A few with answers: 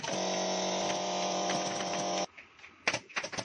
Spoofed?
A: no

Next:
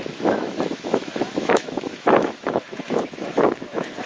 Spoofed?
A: yes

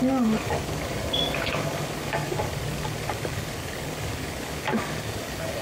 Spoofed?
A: yes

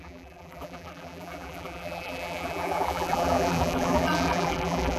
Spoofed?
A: yes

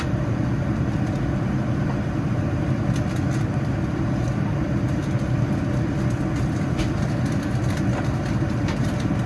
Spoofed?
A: no